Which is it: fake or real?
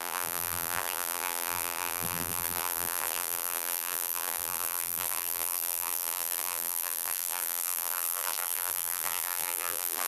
fake